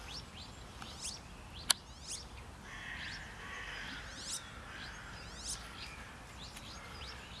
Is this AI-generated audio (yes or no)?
no